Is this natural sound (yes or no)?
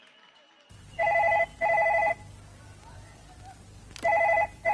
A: no